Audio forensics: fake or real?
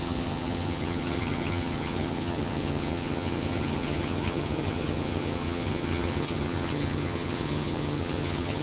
fake